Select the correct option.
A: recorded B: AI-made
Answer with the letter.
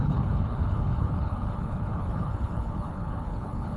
B